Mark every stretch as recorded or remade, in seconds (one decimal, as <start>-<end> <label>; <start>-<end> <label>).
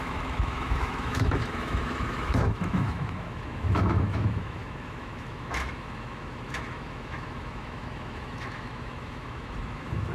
0.0-10.1 remade